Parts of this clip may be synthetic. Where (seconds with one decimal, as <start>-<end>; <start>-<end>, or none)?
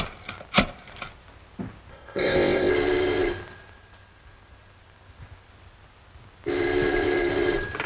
1.9-2.7